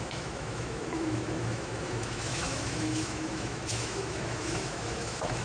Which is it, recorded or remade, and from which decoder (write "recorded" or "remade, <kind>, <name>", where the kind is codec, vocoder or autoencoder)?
remade, autoencoder, DAC-VAE